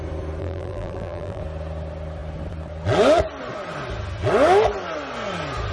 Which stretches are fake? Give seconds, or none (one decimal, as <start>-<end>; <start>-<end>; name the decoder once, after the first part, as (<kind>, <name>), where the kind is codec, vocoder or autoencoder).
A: 0.4-1.4 (vocoder, BigVGAN v2)